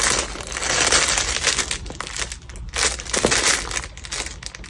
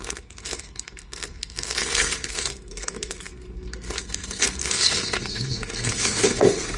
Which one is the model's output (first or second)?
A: second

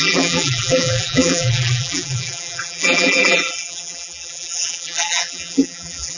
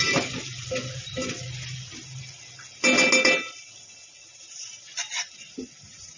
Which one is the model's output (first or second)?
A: first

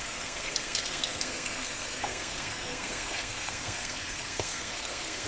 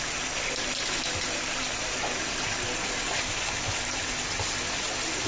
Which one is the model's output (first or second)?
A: first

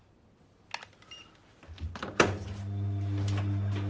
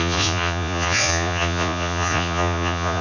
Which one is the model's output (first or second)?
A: second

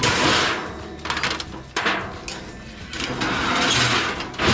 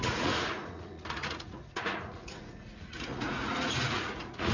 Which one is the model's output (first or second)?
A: second